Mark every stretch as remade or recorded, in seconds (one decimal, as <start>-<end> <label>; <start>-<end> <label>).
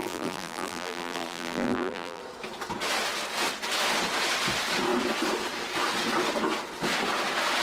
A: 0.0-2.2 remade; 2.2-7.6 recorded